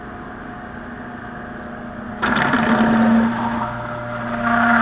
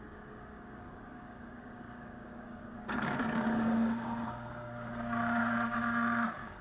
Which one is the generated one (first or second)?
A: second